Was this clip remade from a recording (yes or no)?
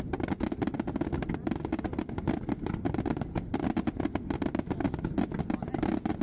no